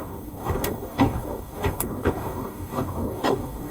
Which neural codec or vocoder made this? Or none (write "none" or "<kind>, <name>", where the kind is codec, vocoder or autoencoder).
codec, DAC